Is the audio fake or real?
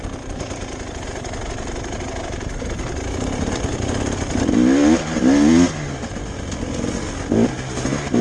real